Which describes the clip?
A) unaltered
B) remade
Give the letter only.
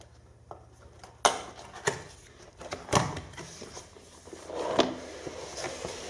A